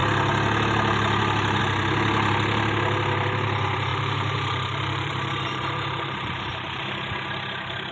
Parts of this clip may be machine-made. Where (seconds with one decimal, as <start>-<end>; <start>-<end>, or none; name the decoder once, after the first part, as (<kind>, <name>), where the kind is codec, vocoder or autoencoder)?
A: 3.9-6.8 (vocoder, BigVGAN v2)